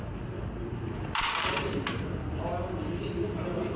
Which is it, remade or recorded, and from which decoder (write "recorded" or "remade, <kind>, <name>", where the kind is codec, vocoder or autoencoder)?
recorded